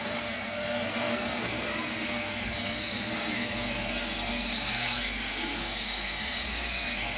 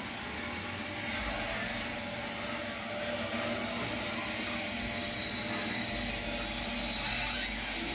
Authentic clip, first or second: second